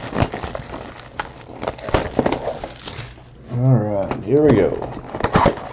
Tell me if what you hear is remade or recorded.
recorded